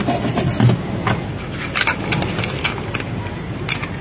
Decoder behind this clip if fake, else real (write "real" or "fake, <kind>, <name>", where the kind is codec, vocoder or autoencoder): real